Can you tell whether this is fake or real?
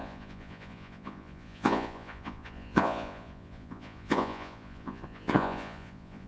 fake